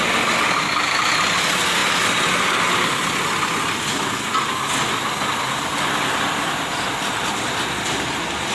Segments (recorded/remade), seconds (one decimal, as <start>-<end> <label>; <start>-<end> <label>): 0.0-8.5 recorded